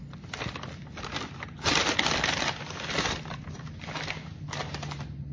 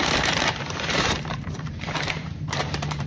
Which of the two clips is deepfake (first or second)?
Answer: second